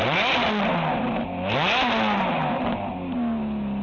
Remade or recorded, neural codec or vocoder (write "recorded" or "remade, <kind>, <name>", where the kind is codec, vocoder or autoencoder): recorded